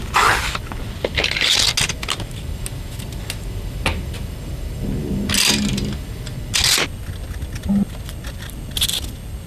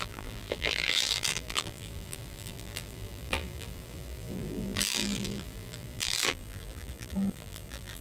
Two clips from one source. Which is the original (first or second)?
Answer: first